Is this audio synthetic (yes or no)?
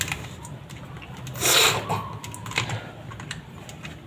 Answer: no